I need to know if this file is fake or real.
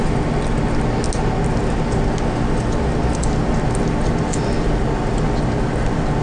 real